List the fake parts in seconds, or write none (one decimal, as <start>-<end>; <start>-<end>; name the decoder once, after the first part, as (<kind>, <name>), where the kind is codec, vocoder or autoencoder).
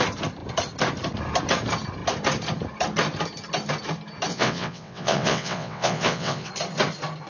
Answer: 4.3-6.5 (vocoder, WaveNeXt)